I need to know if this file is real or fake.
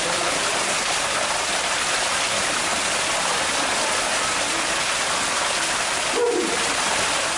real